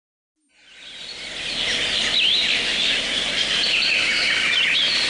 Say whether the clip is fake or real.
real